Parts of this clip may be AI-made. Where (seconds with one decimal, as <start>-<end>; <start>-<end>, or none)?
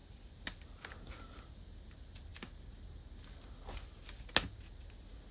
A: none